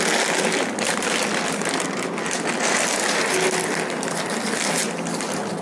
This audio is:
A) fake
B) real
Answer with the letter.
B